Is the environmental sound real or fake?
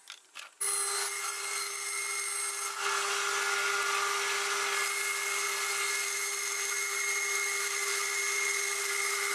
real